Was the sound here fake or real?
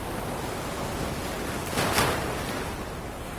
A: real